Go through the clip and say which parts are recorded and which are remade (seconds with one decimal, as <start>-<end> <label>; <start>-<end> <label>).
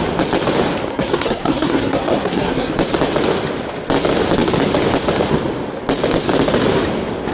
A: 0.0-0.9 recorded; 0.9-2.7 remade; 2.7-7.3 recorded